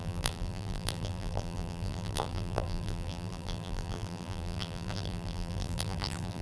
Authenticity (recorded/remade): remade